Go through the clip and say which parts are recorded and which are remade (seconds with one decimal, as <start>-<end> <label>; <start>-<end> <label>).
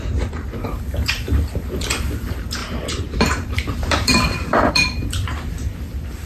0.0-6.3 remade